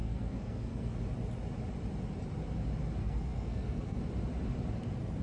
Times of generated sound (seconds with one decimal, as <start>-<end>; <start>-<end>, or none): 0.0-1.0; 3.0-4.0